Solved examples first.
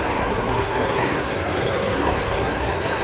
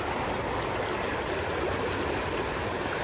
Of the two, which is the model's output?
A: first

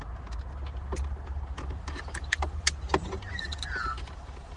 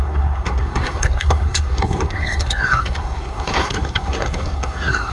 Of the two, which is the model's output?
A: second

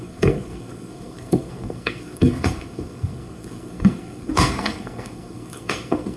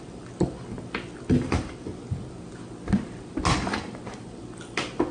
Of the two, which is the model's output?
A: first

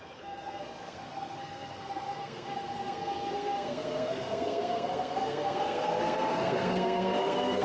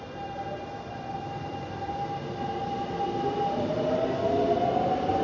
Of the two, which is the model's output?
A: first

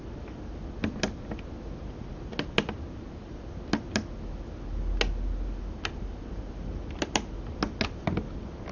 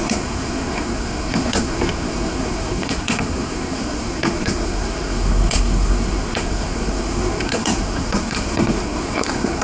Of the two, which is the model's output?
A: second